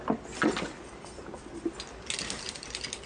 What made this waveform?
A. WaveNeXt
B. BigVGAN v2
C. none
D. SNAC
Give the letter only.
C